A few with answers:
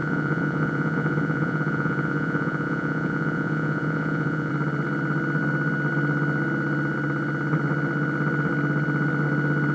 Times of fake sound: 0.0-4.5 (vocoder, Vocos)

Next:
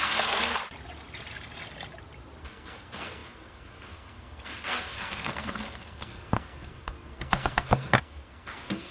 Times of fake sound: 0.0-0.5 (codec, SNAC); 2.4-8.9

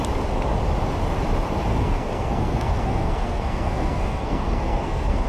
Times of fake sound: 1.7-5.3 (codec, SNAC)

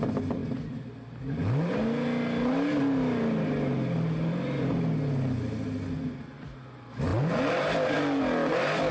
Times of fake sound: none

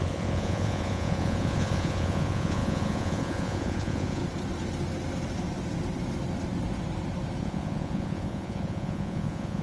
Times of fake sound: 0.0-4.2 (vocoder, Vocos); 7.4-9.6

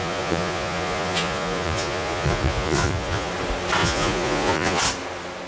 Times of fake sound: 0.0-3.3 (vocoder, Vocos); 3.8-4.8

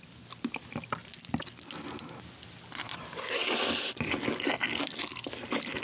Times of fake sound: none

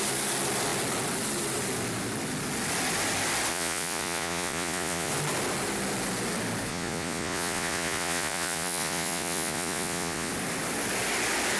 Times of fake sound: 3.5-5.1 (vocoder, Vocos); 6.7-10.3